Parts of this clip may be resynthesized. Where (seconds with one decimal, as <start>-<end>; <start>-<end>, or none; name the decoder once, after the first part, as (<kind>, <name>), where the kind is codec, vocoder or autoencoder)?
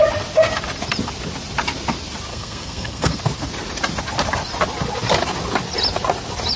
2.3-3.2 (codec, SNAC)